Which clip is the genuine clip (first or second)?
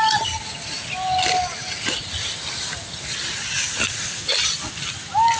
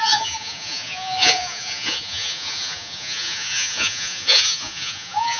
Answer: first